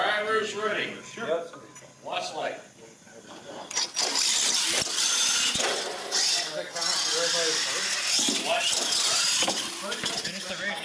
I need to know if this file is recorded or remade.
recorded